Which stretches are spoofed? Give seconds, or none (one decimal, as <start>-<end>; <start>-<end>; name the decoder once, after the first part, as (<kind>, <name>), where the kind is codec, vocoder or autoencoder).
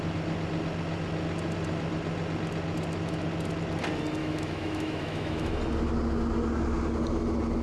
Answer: 4.2-5.5 (autoencoder, DAC-VAE)